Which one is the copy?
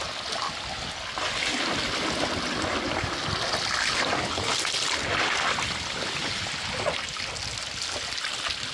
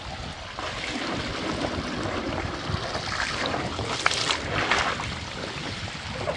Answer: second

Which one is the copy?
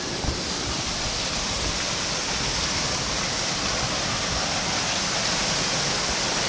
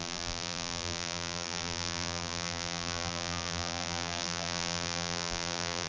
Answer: second